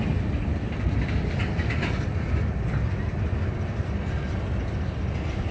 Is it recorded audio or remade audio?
recorded